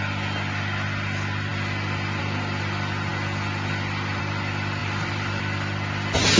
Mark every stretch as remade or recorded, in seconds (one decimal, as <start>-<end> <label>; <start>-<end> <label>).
0.0-4.8 recorded; 4.8-5.4 remade; 5.4-6.4 recorded